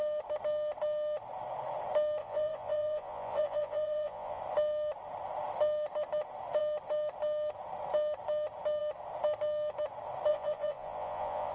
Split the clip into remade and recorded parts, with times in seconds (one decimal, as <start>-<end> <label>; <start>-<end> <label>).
0.0-2.2 recorded; 2.2-4.4 remade; 4.4-10.3 recorded; 10.3-11.5 remade